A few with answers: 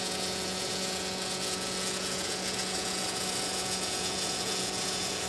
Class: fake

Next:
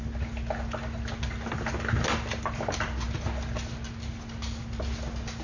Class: real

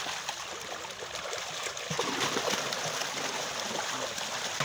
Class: real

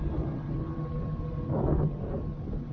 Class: real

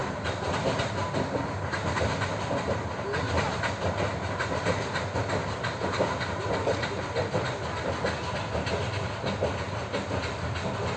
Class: real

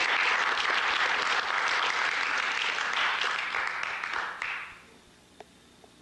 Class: real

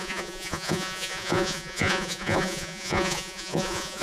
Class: fake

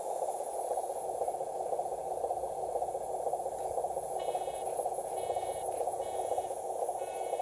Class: fake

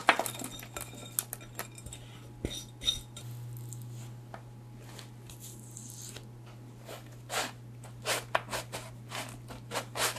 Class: real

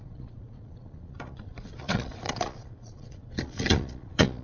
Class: fake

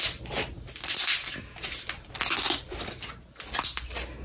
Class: real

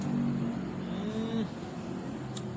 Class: real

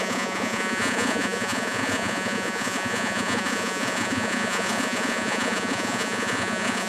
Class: fake